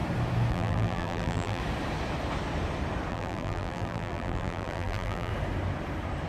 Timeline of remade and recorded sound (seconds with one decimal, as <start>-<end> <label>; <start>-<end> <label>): 0.0-0.5 recorded; 0.5-1.6 remade; 1.6-3.1 recorded; 3.1-5.3 remade; 5.3-6.3 recorded

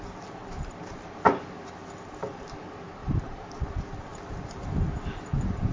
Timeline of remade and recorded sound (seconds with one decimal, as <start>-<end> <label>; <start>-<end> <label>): 0.0-0.4 recorded; 0.4-1.0 remade; 1.0-3.0 recorded; 3.0-3.5 remade; 3.5-4.1 recorded; 4.1-5.7 remade

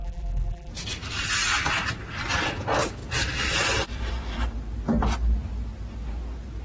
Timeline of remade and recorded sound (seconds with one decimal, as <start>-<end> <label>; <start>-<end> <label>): 0.0-0.7 remade; 0.7-6.6 recorded